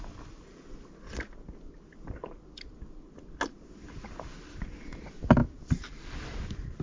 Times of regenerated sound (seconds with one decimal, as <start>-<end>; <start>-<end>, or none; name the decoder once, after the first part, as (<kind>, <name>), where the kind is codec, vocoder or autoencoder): none